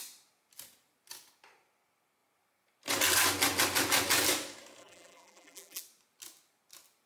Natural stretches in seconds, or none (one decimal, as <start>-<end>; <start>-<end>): 0.0-4.8; 5.8-7.1